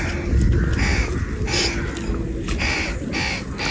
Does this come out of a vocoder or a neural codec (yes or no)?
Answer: no